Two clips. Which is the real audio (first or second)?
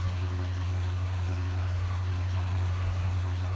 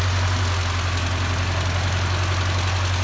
second